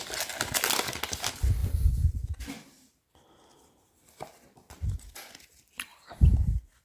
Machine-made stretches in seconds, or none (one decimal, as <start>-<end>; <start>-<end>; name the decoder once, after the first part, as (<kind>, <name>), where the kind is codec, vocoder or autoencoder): 1.6-3.8 (vocoder, BigVGAN v2); 5.9-6.8